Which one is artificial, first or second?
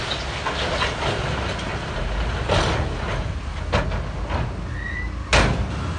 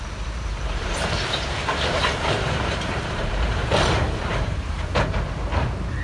second